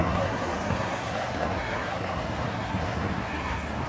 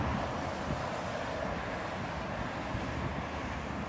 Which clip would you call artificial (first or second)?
first